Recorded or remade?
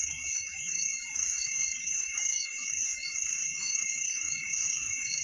remade